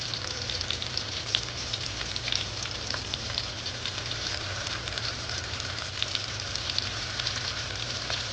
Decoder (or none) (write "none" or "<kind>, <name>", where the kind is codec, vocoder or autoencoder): vocoder, BigVGAN v2